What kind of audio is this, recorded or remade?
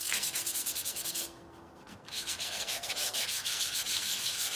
remade